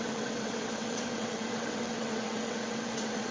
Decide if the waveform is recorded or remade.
remade